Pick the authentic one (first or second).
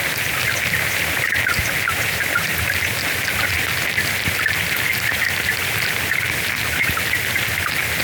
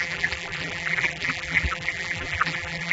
first